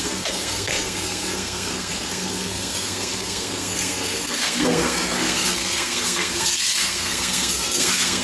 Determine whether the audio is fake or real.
fake